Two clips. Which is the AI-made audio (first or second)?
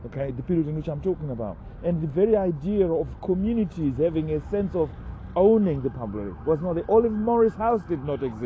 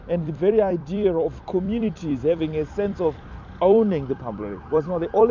second